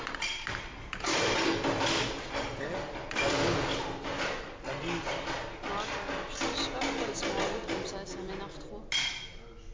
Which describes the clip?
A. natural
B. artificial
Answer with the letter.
A